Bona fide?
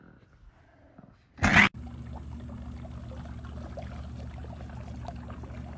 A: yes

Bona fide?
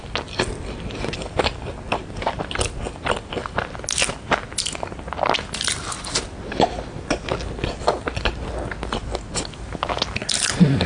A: yes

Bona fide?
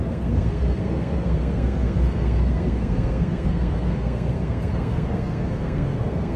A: no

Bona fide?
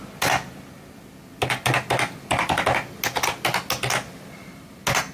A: yes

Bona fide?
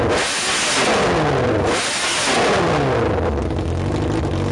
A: yes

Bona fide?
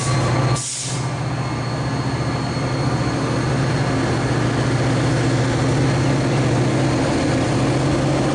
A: yes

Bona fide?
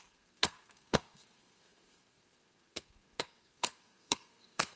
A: no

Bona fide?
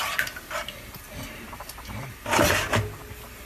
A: yes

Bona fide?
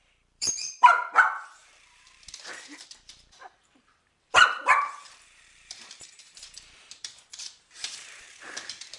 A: no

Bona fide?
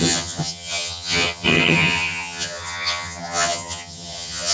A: no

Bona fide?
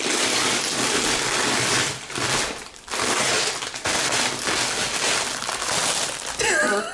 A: yes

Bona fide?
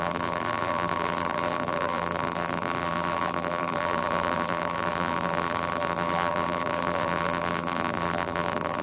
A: no